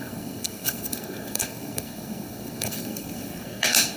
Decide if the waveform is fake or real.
fake